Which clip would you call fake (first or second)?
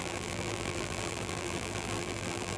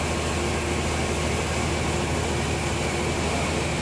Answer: first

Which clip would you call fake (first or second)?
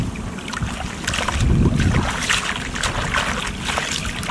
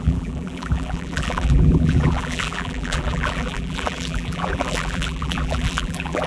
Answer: second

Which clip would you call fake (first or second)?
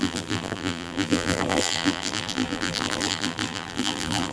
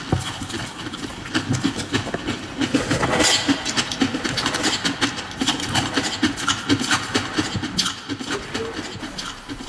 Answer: first